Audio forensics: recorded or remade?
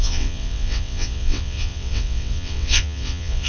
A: remade